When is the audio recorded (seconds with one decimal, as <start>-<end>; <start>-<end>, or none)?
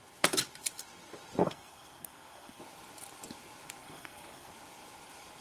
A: 0.0-1.4; 2.6-3.8; 4.5-5.4